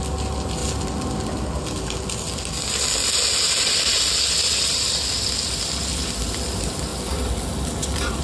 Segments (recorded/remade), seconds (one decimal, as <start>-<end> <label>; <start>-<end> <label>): 0.0-8.2 recorded